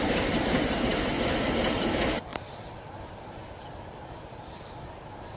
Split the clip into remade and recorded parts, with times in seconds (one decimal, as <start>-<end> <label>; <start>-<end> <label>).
0.0-2.3 remade; 2.3-3.0 recorded; 3.0-5.4 remade